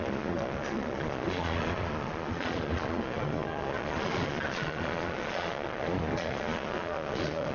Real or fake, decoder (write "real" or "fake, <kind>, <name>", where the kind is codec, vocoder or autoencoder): fake, vocoder, Vocos